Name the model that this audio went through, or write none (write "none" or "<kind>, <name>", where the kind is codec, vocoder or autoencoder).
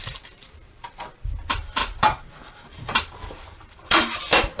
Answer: vocoder, BigVGAN v2